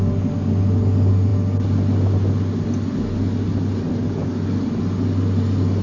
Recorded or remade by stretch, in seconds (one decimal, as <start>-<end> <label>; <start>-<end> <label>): 0.0-5.8 recorded